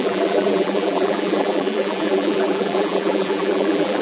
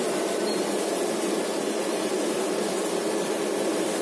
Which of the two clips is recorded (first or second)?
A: second